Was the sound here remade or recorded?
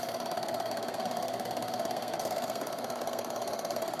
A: remade